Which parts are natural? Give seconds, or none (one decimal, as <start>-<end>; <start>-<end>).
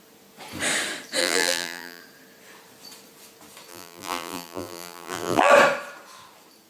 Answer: 0.0-1.2; 2.0-3.7; 5.5-6.7